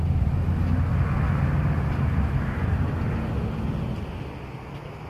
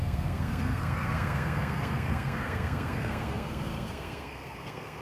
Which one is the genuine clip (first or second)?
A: first